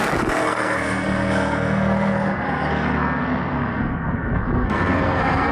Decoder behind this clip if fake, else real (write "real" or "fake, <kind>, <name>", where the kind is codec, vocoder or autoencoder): fake, codec, SNAC